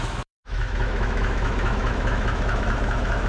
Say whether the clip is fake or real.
fake